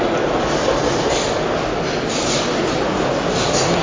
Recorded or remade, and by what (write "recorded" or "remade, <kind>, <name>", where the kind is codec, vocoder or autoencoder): recorded